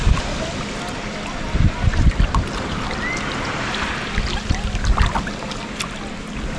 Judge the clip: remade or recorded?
recorded